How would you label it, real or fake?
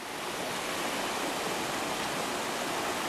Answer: real